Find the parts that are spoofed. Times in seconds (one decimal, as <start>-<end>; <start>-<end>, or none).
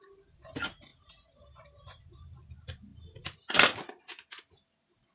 none